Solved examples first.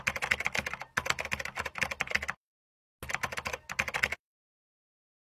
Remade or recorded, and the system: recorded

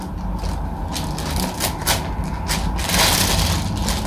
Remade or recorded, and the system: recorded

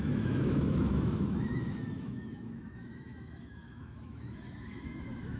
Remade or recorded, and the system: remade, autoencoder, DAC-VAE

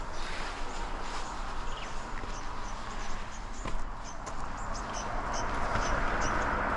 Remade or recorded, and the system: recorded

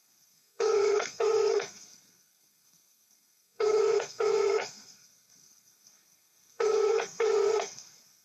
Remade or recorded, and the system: remade, codec, SNAC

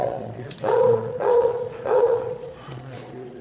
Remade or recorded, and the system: remade, vocoder, Vocos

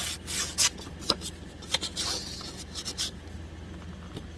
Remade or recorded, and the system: recorded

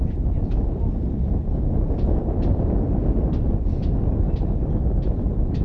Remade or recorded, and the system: recorded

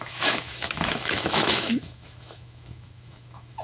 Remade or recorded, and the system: remade, autoencoder, DAC-VAE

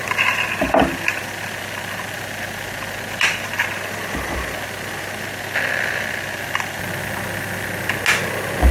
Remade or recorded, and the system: recorded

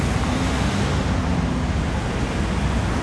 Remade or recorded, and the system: recorded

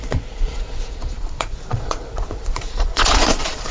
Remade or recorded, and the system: remade, vocoder, Vocos